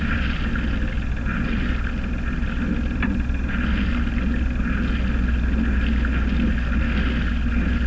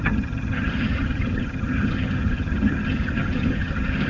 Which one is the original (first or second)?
first